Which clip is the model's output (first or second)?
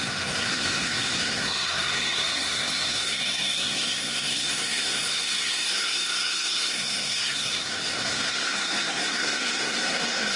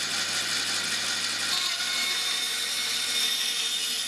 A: first